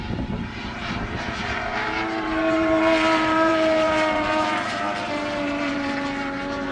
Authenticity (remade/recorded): remade